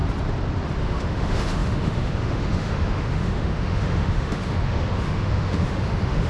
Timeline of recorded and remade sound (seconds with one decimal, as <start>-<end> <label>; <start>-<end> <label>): 0.0-0.8 recorded; 0.8-6.3 remade